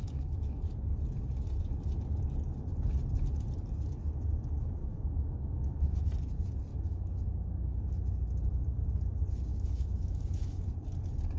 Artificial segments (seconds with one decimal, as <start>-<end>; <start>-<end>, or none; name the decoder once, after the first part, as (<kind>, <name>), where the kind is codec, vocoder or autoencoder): 0.0-0.7 (autoencoder, DAC-VAE); 4.8-6.1; 6.7-7.8; 9.5-10.7